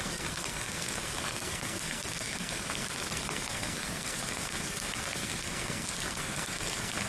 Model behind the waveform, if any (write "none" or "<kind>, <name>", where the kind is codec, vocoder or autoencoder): codec, SNAC